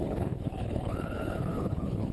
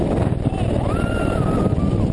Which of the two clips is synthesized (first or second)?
first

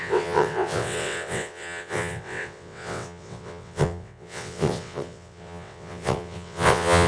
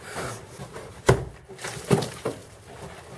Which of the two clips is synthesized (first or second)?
first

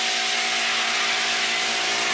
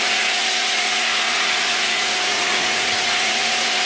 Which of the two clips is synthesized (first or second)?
second